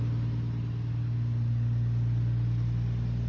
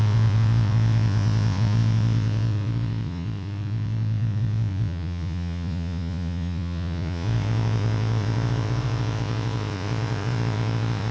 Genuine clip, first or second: first